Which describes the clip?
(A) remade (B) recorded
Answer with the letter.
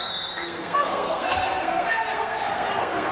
A